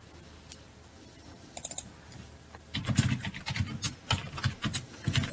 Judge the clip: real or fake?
real